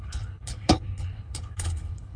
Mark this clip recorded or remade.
remade